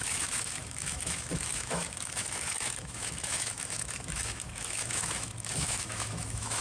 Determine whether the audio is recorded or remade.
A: remade